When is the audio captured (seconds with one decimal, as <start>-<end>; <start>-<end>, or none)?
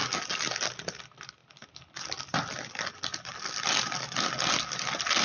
0.0-5.2